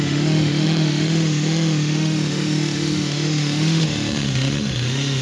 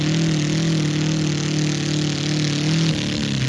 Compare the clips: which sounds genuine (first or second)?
second